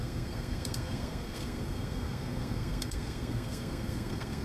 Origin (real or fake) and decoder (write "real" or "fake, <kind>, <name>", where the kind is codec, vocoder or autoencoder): fake, codec, SNAC